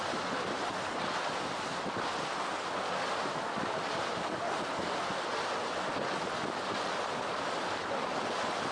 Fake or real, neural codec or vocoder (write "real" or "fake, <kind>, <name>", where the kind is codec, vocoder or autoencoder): real